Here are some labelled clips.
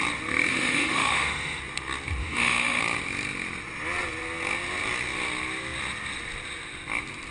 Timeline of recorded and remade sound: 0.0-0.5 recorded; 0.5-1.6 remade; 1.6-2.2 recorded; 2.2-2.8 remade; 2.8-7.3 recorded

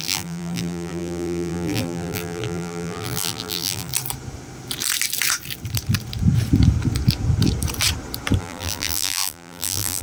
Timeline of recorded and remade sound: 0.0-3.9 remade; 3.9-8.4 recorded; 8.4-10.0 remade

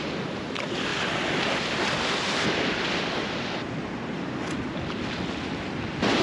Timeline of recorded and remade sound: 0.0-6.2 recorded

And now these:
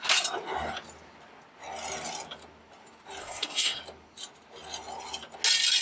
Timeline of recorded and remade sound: 0.0-3.2 recorded; 3.2-3.8 remade; 3.8-5.8 recorded

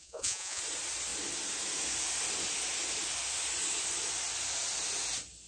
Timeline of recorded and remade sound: 0.0-0.6 remade; 0.6-5.5 recorded

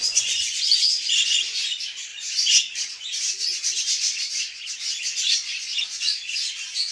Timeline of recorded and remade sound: 0.0-6.9 remade